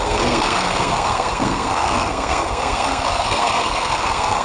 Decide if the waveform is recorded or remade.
remade